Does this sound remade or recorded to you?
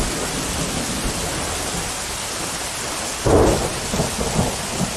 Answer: recorded